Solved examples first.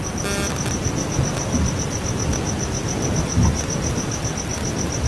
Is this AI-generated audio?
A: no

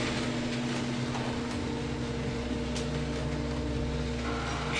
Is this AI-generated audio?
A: no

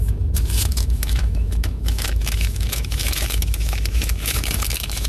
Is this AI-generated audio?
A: yes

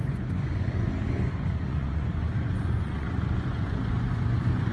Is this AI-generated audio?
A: yes